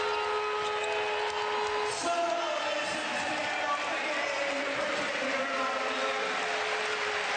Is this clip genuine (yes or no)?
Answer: yes